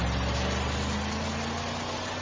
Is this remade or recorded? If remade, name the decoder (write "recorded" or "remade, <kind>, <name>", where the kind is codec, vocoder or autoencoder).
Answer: recorded